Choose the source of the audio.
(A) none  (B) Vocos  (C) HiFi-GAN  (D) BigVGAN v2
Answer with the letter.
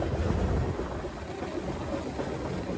A